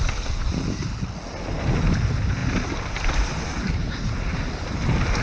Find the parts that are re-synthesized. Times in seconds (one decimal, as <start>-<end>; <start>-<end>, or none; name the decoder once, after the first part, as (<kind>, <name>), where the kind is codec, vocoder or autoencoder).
none